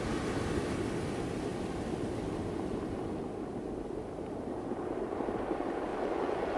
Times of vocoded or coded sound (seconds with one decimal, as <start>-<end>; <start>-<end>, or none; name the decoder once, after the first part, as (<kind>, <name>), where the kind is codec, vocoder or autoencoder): 5.9-6.6 (vocoder, Vocos)